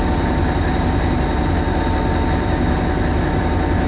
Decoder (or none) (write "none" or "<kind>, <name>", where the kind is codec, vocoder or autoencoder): none